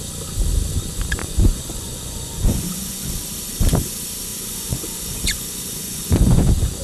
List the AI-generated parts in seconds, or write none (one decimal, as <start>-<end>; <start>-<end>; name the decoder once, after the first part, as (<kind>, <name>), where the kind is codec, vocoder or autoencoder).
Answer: 1.2-3.1 (vocoder, Vocos); 4.3-6.8